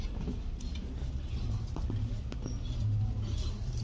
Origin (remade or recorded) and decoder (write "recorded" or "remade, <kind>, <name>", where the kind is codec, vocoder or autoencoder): recorded